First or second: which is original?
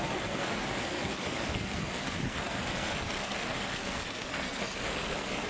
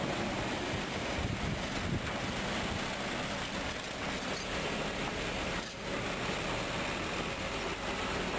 second